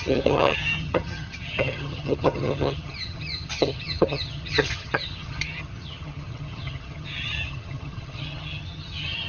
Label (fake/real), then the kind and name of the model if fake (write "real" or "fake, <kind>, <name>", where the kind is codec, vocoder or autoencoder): fake, vocoder, HiFi-GAN